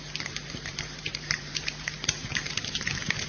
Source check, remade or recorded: remade